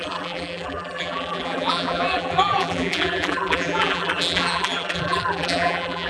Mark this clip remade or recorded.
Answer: remade